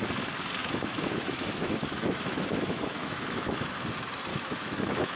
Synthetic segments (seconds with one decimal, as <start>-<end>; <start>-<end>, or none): 0.6-3.7; 4.3-5.2